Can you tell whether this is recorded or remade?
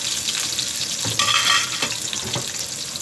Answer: recorded